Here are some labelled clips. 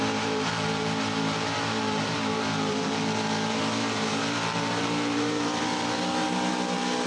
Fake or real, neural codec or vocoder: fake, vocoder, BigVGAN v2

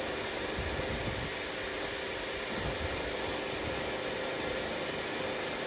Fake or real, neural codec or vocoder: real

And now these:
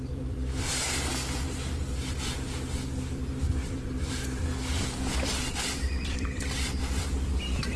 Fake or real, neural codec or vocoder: fake, vocoder, BigVGAN v2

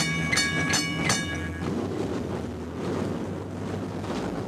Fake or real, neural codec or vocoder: real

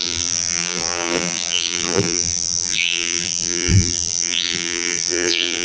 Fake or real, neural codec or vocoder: fake, vocoder, BigVGAN v2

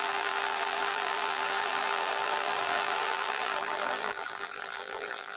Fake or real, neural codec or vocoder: fake, vocoder, BigVGAN v2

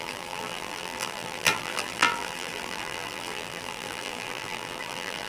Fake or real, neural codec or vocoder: fake, vocoder, BigVGAN v2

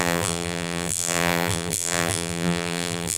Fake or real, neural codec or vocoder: fake, vocoder, BigVGAN v2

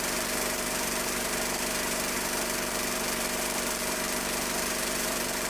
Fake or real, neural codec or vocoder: fake, vocoder, BigVGAN v2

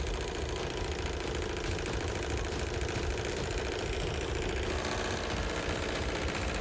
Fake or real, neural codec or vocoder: fake, vocoder, BigVGAN v2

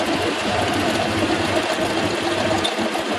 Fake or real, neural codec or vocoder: fake, vocoder, BigVGAN v2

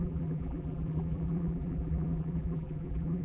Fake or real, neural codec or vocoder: fake, vocoder, BigVGAN v2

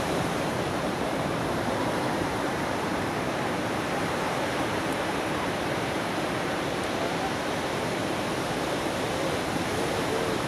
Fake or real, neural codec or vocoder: fake, vocoder, BigVGAN v2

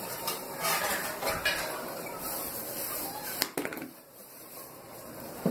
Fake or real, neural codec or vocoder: fake, vocoder, BigVGAN v2